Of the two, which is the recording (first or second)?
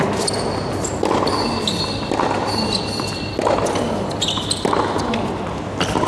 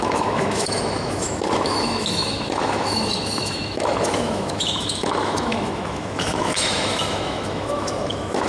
first